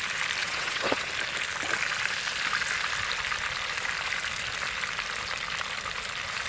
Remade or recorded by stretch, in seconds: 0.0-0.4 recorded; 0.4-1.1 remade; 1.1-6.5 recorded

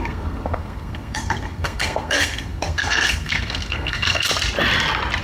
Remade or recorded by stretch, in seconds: 0.0-4.3 remade; 4.3-5.2 recorded

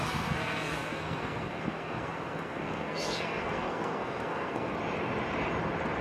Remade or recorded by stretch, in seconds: 0.0-4.7 remade; 4.7-6.0 recorded